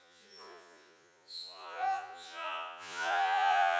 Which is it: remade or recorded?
remade